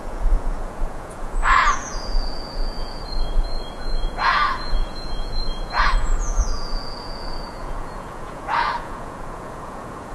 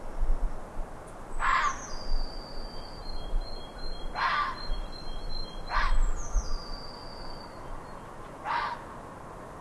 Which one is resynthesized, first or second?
first